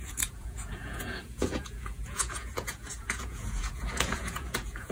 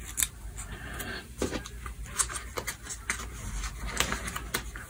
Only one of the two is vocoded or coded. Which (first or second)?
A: first